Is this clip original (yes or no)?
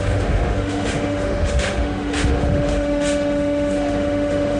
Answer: no